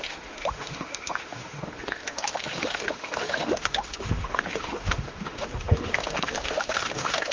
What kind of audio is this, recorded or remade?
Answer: remade